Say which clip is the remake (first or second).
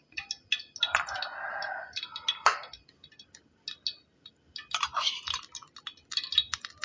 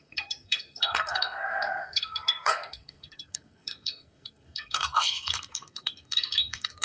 second